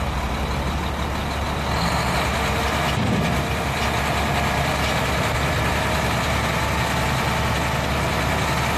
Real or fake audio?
real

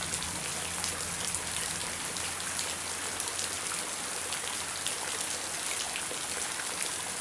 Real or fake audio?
real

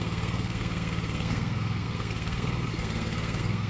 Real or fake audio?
fake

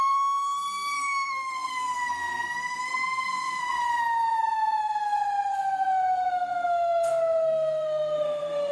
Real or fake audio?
fake